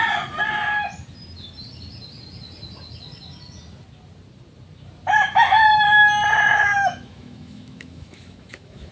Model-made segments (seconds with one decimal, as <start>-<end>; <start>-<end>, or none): 6.5-8.9